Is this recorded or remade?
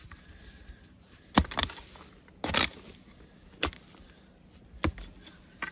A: recorded